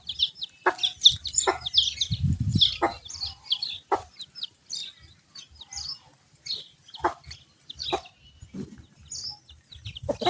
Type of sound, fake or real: real